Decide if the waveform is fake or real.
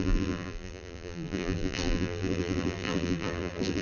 fake